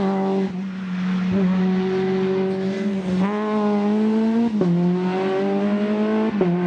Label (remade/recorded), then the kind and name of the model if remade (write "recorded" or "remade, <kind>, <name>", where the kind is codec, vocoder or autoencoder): recorded